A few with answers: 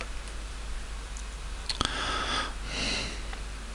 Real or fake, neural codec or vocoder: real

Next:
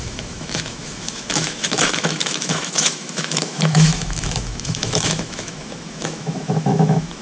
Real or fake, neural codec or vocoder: fake, autoencoder, DAC-VAE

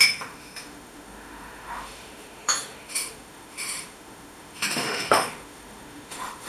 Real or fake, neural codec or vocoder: fake, autoencoder, DAC-VAE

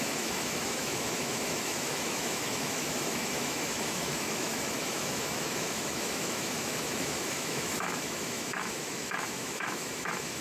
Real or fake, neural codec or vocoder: fake, autoencoder, DAC-VAE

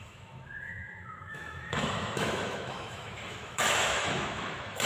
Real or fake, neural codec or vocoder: fake, autoencoder, DAC-VAE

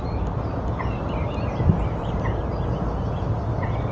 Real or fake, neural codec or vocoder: real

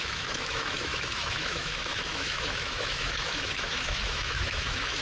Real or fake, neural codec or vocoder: fake, autoencoder, DAC-VAE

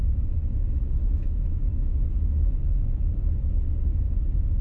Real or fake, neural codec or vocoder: real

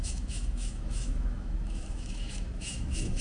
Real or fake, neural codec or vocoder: fake, autoencoder, DAC-VAE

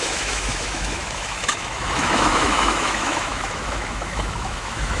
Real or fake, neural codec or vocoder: fake, autoencoder, DAC-VAE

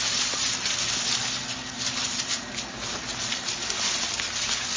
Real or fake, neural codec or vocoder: real